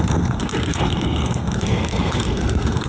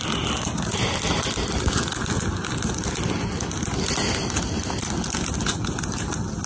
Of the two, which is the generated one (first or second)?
first